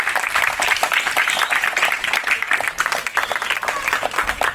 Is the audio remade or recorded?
recorded